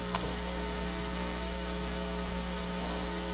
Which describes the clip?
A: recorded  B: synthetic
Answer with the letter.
B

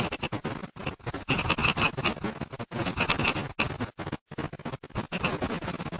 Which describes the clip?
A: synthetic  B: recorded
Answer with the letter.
B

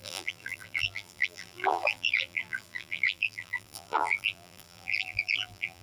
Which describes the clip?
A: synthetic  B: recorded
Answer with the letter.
A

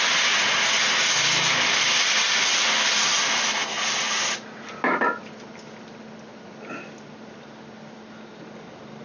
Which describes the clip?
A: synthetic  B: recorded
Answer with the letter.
B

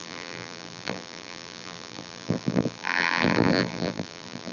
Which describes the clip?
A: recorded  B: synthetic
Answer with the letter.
B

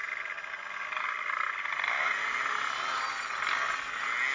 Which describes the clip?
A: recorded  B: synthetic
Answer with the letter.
A